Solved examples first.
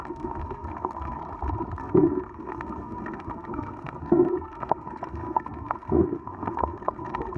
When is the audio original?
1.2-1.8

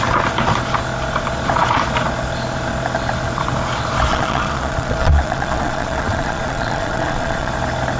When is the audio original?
0.0-4.1; 7.5-8.0

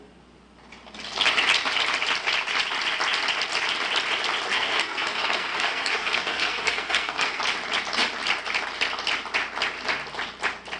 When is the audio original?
0.0-4.5; 7.4-10.8

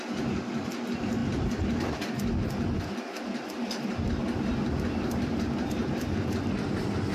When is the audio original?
0.0-7.1

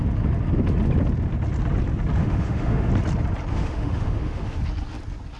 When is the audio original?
0.0-2.2; 2.9-3.5; 4.6-5.4

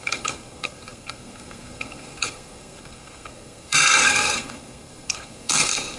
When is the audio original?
none